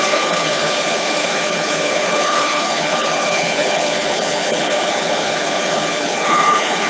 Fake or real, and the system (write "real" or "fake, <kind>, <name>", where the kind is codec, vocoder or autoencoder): fake, codec, HILCodec